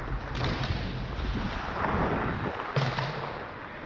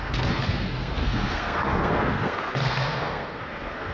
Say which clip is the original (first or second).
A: first